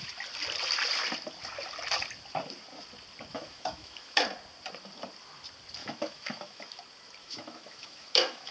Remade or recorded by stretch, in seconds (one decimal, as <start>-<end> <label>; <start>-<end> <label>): 0.0-3.3 recorded; 3.3-4.2 remade; 4.2-5.8 recorded; 5.8-6.8 remade; 6.8-7.2 recorded; 7.2-8.5 remade